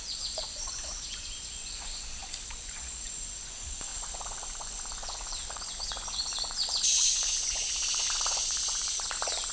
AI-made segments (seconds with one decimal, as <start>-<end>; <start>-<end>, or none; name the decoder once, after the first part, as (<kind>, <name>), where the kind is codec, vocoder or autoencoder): 0.0-9.5 (vocoder, Vocos)